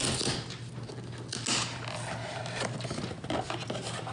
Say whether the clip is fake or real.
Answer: real